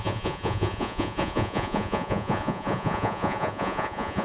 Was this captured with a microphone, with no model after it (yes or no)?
no